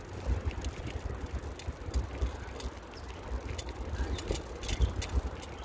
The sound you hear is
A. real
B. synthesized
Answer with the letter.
A